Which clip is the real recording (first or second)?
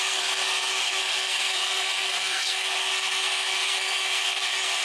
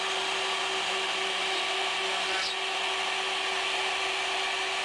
second